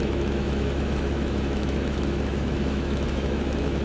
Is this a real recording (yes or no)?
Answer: no